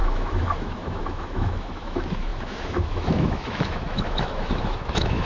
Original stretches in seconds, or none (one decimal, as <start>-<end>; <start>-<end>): none